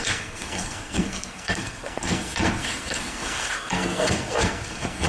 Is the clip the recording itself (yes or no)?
no